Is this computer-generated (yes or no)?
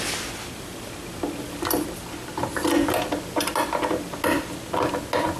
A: no